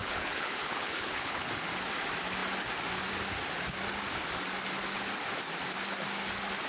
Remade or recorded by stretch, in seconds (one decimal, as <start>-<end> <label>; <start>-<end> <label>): 0.0-1.5 remade; 1.5-6.7 recorded